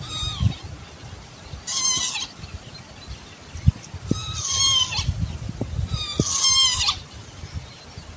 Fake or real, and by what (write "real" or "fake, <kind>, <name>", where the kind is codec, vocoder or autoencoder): real